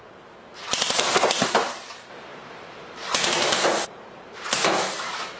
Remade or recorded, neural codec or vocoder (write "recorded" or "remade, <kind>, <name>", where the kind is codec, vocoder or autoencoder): remade, vocoder, BigVGAN v2